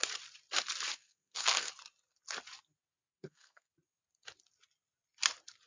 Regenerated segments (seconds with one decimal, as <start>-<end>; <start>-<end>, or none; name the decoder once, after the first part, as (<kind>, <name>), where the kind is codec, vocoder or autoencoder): 1.0-1.7 (codec, SNAC); 3.1-3.7